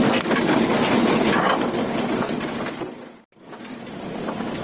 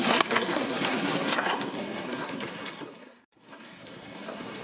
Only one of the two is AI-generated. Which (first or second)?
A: second